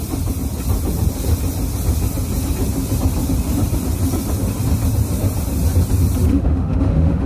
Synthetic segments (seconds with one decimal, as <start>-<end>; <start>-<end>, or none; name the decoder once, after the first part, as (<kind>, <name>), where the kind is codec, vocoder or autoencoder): 6.3-7.3 (autoencoder, DAC-VAE)